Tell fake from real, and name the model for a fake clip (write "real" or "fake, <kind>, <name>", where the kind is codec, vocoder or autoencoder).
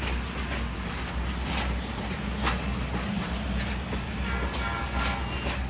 real